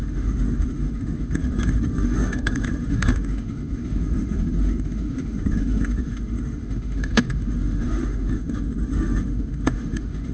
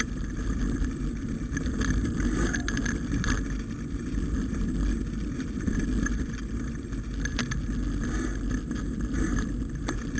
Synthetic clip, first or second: first